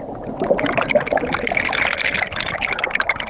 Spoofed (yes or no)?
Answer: no